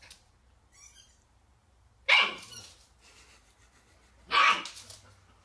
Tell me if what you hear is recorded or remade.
recorded